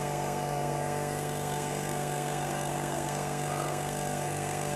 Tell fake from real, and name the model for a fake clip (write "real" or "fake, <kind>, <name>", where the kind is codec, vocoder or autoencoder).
fake, codec, SNAC